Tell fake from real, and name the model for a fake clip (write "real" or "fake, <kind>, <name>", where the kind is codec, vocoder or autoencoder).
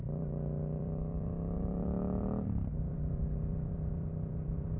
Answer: fake, vocoder, BigVGAN v2